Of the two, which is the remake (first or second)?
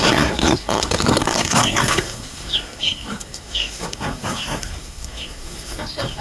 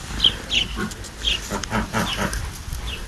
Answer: first